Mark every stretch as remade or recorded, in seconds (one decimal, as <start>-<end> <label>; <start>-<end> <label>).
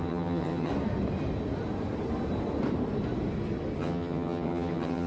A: 0.0-0.7 remade; 0.7-3.8 recorded; 3.8-5.1 remade